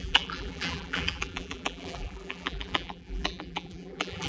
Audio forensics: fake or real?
fake